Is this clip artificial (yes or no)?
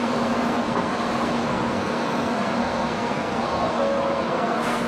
yes